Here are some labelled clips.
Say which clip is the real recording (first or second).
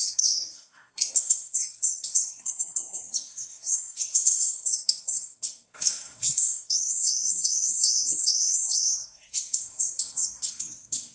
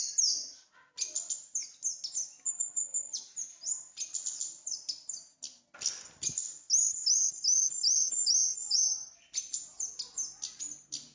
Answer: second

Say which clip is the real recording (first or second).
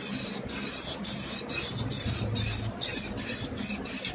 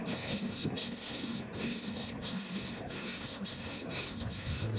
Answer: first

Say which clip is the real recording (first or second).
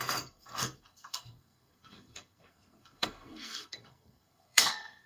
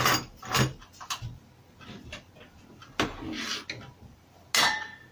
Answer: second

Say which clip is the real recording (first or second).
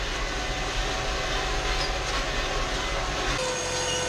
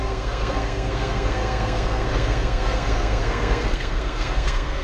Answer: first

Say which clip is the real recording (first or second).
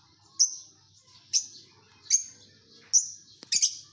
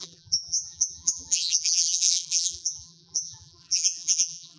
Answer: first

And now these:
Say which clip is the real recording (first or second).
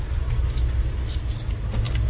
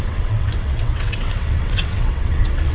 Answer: first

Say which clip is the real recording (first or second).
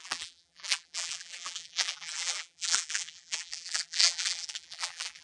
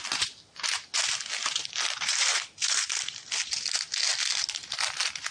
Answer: second